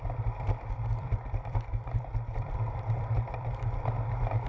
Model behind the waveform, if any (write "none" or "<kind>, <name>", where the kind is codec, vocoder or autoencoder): vocoder, BigVGAN v2